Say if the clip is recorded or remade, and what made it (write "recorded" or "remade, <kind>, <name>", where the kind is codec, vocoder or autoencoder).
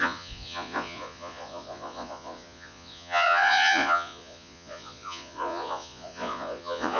remade, vocoder, Vocos